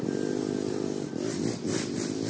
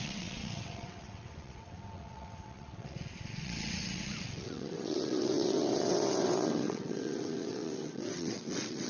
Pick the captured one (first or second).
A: first